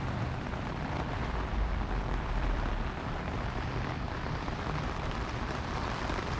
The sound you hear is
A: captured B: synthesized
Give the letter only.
B